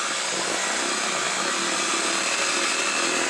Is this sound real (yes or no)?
yes